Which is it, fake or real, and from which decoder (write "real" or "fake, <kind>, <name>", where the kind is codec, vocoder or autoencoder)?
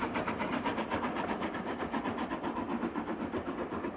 real